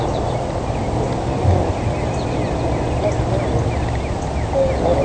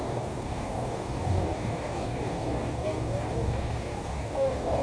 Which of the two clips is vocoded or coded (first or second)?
second